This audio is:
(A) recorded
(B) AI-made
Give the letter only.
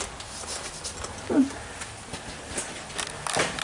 A